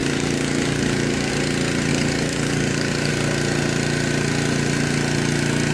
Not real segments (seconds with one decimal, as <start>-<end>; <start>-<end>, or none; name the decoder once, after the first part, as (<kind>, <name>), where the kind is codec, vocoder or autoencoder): 0.0-1.3 (codec, DAC); 1.9-3.1